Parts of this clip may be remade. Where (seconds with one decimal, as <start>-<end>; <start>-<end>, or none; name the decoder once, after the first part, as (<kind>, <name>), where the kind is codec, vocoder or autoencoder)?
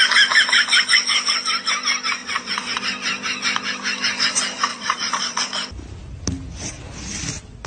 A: 2.2-2.8 (vocoder, Vocos); 4.7-5.4